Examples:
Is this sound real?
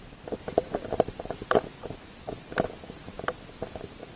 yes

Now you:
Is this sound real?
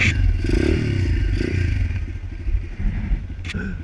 yes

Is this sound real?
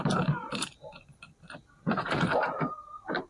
no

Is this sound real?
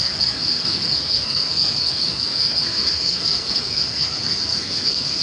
no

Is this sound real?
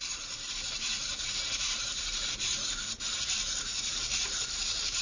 no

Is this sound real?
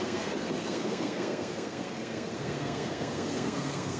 no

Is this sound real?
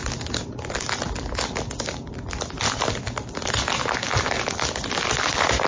yes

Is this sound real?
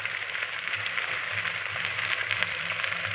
no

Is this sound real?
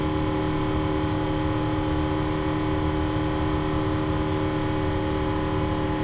yes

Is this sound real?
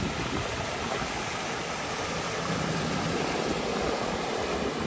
yes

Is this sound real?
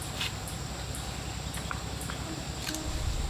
yes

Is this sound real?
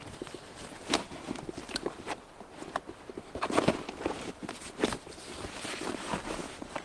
no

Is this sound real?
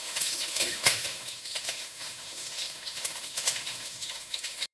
no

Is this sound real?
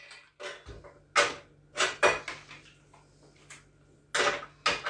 yes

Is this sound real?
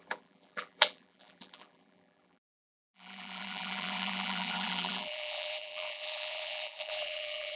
no